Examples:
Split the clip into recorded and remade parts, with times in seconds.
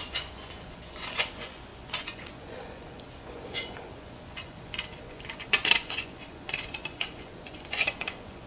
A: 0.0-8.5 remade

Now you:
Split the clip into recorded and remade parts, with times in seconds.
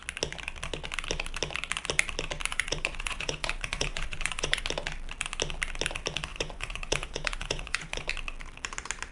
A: 0.0-2.5 recorded; 2.5-4.6 remade; 4.6-6.3 recorded; 6.3-8.1 remade; 8.1-9.1 recorded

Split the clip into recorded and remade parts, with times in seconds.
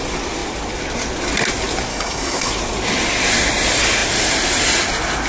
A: 0.0-1.9 recorded; 1.9-2.5 remade; 2.5-5.3 recorded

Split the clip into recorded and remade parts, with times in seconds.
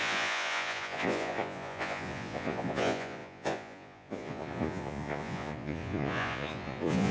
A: 0.0-7.1 remade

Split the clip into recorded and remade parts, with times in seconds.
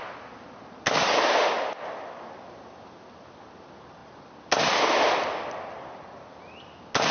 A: 0.0-7.1 recorded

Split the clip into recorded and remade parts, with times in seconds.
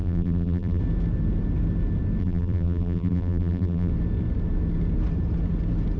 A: 0.0-0.8 remade; 0.8-2.2 recorded; 2.2-3.9 remade; 3.9-6.0 recorded